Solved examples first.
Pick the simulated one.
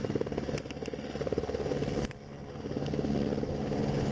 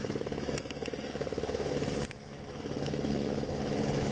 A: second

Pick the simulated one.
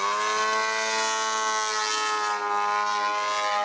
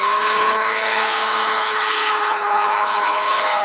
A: second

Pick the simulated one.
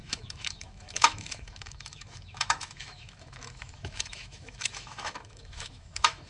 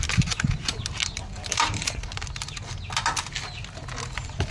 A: first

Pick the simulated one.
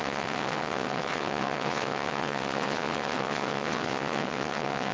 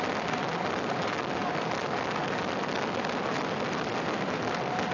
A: first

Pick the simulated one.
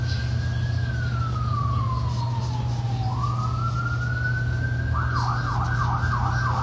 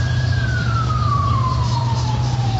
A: second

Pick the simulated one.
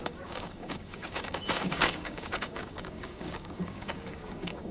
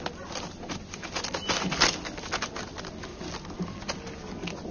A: first